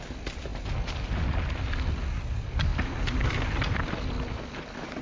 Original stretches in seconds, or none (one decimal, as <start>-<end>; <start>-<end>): 0.0-5.0